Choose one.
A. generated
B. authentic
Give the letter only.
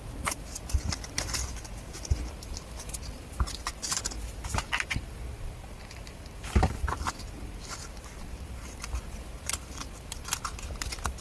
A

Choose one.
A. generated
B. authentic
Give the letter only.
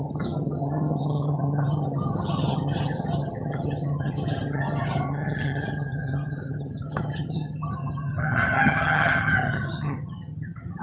A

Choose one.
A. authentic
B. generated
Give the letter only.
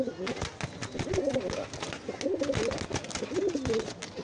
A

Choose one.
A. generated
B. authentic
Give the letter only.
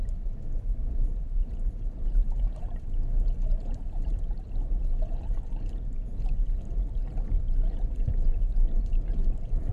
A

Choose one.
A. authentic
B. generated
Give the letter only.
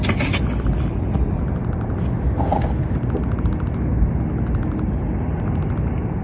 A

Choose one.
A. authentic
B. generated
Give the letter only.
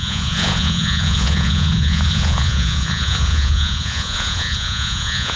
B